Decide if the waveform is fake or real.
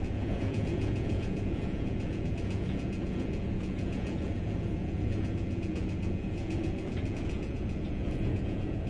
fake